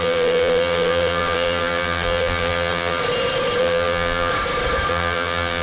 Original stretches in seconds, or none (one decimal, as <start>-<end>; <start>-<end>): 3.0-3.6; 4.3-4.9